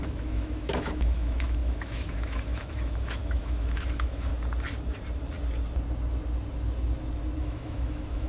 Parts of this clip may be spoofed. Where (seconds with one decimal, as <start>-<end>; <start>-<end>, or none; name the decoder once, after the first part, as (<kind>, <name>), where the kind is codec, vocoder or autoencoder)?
0.0-4.3 (autoencoder, DAC-VAE); 7.4-8.3